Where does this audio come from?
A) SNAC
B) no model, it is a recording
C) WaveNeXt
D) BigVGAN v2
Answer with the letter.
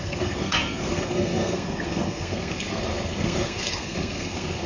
A